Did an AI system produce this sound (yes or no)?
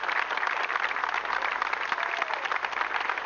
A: no